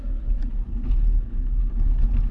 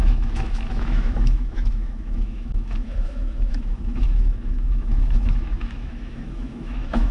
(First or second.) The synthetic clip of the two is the second